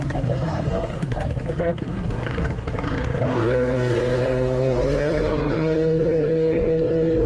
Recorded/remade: remade